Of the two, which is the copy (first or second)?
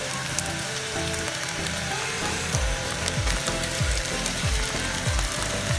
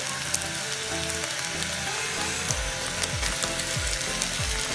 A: first